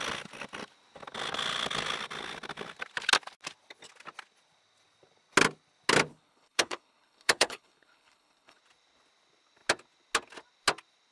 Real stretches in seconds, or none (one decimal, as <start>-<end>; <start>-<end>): 0.0-6.1; 8.6-11.1